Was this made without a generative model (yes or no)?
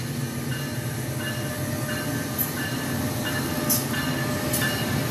yes